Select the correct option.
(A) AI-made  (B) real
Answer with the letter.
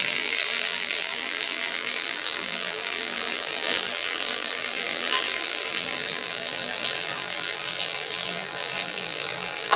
A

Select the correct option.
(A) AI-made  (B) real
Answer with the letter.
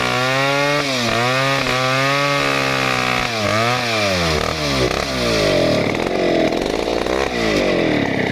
B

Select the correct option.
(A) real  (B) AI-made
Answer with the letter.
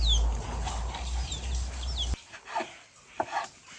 A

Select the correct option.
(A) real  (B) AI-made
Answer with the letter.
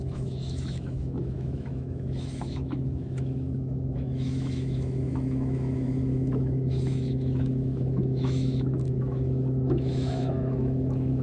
B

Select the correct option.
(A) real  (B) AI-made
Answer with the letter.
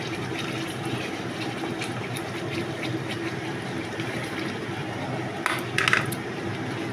A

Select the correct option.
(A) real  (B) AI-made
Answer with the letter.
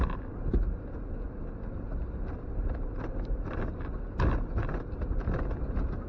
A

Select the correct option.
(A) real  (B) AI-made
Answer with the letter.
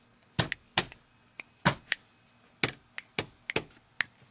A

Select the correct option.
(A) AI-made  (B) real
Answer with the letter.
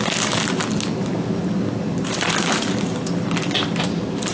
B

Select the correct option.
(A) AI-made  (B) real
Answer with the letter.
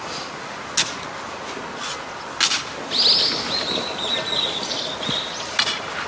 B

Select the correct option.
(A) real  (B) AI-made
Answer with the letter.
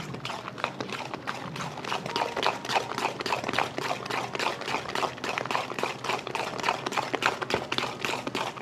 A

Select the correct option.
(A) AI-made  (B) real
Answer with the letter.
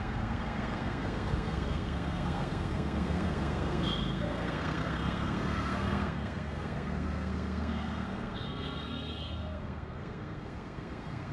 A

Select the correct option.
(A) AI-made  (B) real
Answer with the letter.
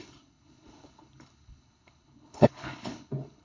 A